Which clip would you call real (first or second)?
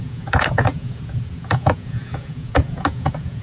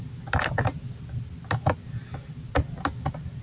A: second